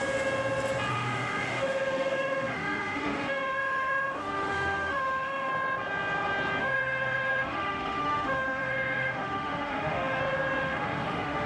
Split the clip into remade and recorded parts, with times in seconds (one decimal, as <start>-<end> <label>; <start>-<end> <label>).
0.0-0.9 recorded; 0.9-5.5 remade; 5.5-6.6 recorded; 6.6-10.2 remade; 10.2-10.6 recorded; 10.6-11.5 remade